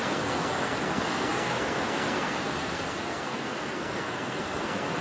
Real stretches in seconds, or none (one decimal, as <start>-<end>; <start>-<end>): none